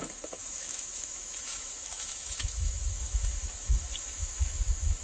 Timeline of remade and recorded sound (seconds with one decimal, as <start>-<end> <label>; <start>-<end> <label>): 0.0-5.0 remade